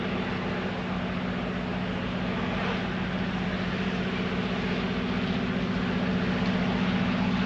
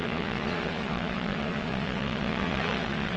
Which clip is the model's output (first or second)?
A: second